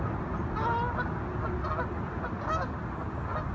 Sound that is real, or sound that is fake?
real